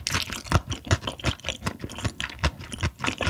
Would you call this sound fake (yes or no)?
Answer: yes